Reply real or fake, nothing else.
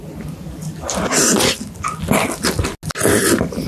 real